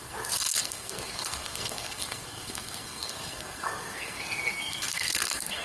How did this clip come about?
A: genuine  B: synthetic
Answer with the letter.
B